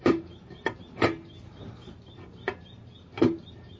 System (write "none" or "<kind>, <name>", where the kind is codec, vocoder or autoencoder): vocoder, BigVGAN v2